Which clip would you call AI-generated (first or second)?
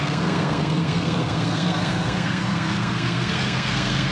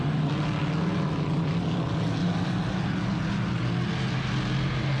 first